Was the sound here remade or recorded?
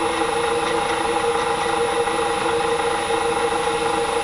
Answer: recorded